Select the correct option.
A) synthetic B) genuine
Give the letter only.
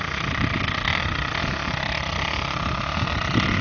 B